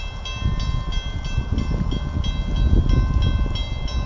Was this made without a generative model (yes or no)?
yes